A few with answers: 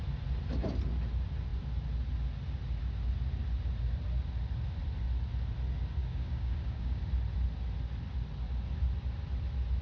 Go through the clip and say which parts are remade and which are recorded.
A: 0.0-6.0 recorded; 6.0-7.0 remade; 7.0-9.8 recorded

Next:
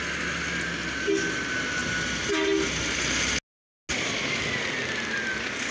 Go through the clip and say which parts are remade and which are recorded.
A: 0.0-5.7 recorded

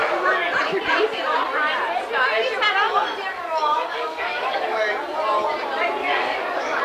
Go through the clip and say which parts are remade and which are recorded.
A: 0.0-3.3 recorded; 3.3-4.8 remade; 4.8-6.0 recorded; 6.0-6.8 remade

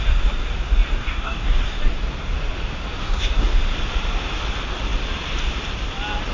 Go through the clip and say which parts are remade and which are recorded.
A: 0.0-1.0 recorded; 1.0-1.8 remade; 1.8-3.0 recorded; 3.0-3.6 remade; 3.6-6.3 recorded

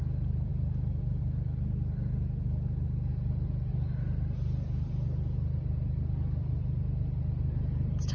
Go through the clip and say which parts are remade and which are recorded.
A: 0.0-8.1 recorded